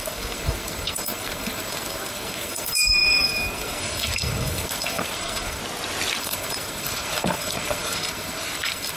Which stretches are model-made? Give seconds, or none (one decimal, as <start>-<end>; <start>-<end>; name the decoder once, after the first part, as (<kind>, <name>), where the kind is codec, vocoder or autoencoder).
0.0-5.6 (codec, SNAC); 6.2-9.0